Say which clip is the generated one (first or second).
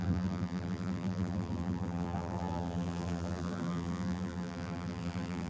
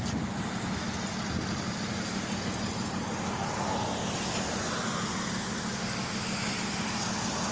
first